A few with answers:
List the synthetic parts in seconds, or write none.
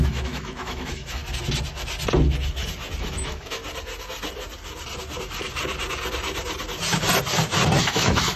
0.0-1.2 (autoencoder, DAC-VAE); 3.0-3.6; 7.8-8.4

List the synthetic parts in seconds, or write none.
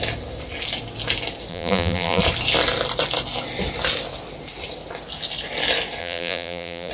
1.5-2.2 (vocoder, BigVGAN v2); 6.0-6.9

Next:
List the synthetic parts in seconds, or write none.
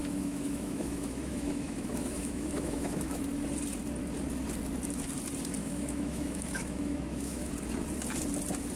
0.0-3.2 (autoencoder, DAC-VAE); 5.6-7.5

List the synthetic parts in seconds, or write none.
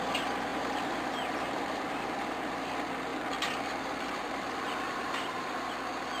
0.5-2.5 (vocoder, BigVGAN v2); 3.1-5.5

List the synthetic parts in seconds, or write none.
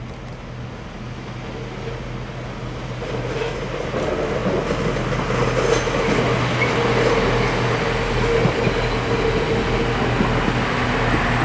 none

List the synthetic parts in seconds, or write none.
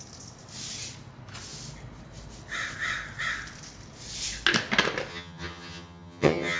5.1-6.6 (vocoder, HiFi-GAN)